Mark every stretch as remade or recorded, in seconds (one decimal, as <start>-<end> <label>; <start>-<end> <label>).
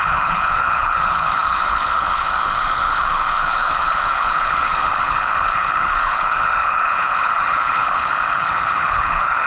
0.0-9.5 remade